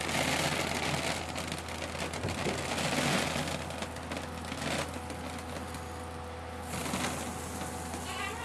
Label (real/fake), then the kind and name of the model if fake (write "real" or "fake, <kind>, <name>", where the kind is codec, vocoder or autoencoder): real